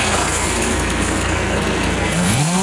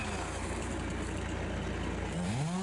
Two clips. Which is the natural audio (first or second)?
second